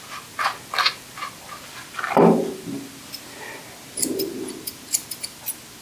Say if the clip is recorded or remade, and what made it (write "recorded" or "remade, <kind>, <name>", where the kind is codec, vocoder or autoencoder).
recorded